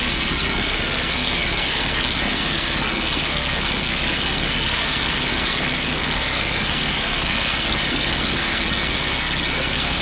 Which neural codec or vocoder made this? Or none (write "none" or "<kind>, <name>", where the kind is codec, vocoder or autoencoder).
codec, SNAC